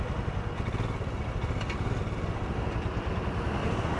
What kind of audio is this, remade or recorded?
recorded